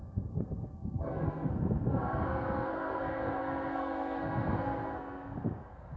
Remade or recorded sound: remade